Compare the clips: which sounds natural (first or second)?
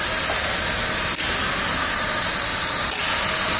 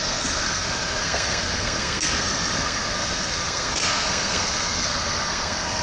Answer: first